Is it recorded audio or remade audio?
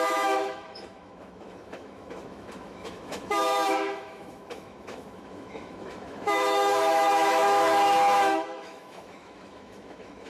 remade